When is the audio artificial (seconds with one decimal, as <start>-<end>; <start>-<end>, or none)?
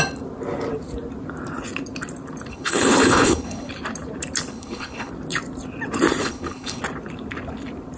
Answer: 2.5-3.7; 4.5-5.1; 6.2-6.8